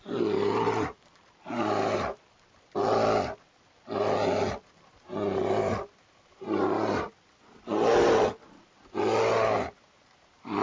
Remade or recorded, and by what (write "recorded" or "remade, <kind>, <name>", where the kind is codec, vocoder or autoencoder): recorded